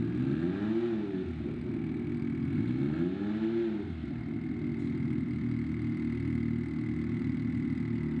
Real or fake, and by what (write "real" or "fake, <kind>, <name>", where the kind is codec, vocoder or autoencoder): real